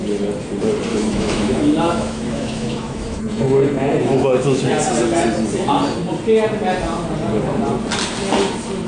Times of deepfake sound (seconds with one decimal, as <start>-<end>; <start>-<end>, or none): 0.9-4.6